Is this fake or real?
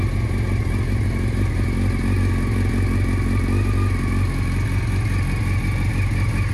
real